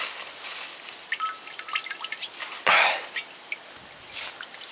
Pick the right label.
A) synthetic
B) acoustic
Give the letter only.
B